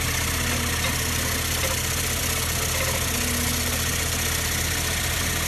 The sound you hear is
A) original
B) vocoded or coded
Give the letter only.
A